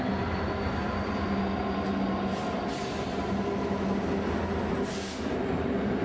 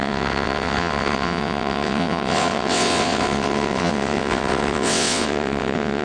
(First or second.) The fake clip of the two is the second